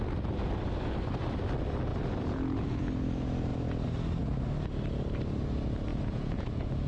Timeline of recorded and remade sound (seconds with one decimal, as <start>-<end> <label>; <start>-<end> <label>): 0.0-1.9 recorded; 1.9-2.9 remade; 2.9-5.9 recorded; 5.9-6.9 remade